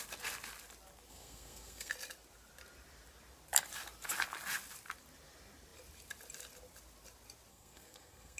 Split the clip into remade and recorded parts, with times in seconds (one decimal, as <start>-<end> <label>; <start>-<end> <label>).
0.0-1.1 recorded; 1.1-1.9 remade; 1.9-7.5 recorded; 7.5-8.4 remade